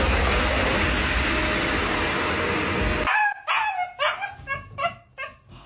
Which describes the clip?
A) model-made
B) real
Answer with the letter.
B